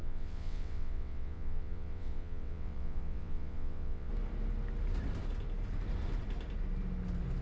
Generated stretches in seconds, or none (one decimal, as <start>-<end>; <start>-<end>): 0.0-4.1